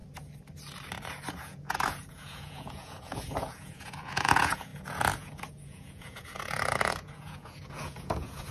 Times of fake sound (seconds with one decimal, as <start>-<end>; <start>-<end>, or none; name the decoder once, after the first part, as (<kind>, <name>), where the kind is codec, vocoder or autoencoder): 1.3-8.5 (vocoder, Vocos)